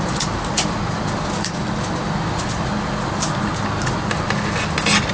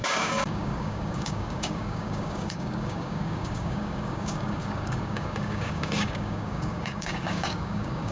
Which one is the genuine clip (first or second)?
first